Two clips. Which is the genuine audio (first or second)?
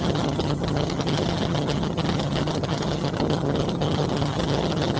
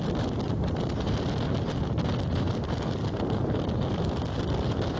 second